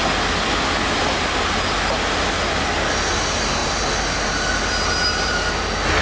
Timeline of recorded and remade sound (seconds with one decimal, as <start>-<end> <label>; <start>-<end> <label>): 0.0-6.0 recorded